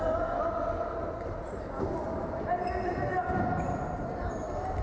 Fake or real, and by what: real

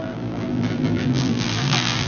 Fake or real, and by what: fake, vocoder, BigVGAN v2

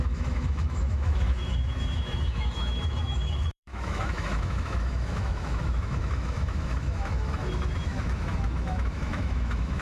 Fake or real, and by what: fake, autoencoder, DAC-VAE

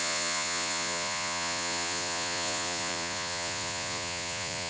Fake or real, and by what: fake, vocoder, Vocos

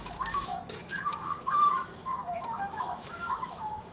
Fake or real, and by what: fake, autoencoder, DAC-VAE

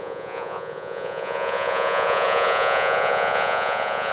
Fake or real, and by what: fake, vocoder, Vocos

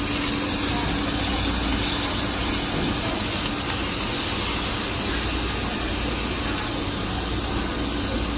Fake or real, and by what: real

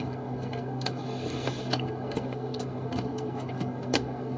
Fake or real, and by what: fake, codec, SNAC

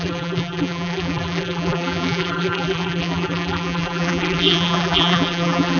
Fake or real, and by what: fake, vocoder, BigVGAN v2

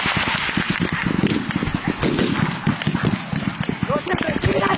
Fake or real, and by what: real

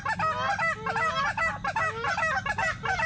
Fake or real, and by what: real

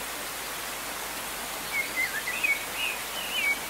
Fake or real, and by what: real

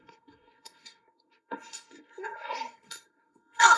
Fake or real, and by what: fake, codec, SNAC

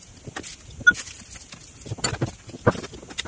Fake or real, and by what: real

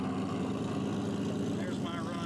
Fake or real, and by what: real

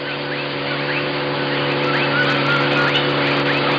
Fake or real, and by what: real